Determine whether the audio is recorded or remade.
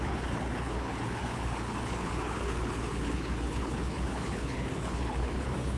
remade